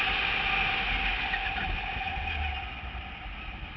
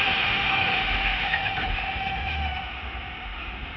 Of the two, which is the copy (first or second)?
second